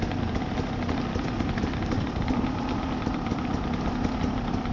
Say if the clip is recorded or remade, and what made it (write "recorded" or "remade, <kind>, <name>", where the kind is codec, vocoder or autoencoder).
recorded